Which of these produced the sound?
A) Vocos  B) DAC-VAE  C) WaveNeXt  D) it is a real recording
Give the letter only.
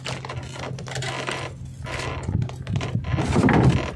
D